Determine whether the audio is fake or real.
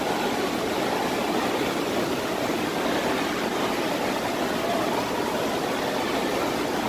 real